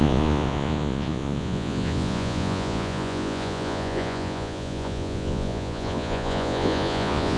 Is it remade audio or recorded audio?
remade